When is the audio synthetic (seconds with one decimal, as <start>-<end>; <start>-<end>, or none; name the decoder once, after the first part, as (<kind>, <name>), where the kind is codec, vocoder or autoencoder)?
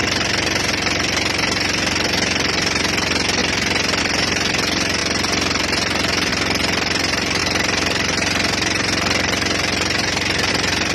none